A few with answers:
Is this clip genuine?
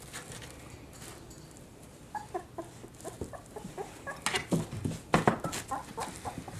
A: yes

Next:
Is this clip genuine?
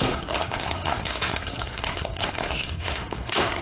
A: no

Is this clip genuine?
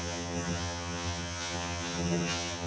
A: no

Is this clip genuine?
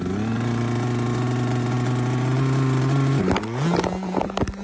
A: yes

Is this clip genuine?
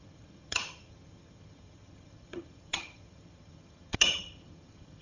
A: no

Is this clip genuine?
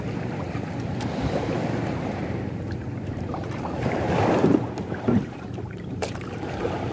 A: no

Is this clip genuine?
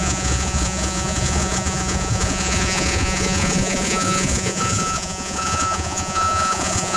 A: no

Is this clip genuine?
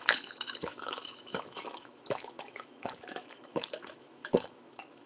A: no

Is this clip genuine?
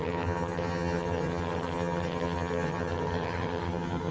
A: no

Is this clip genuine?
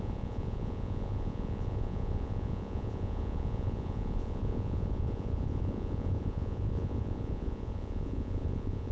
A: no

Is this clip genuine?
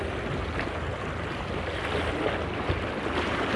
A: yes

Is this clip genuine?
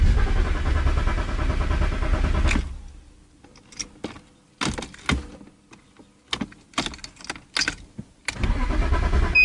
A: yes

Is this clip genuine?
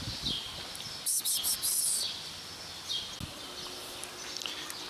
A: yes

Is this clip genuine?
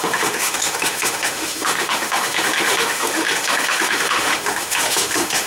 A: no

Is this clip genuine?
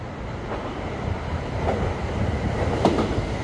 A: yes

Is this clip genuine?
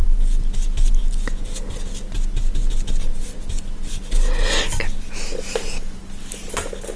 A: yes